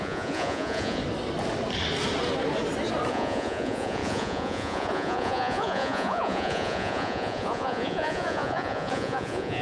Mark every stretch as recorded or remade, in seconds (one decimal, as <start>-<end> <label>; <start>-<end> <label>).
0.0-1.0 remade; 1.0-3.1 recorded; 3.1-9.6 remade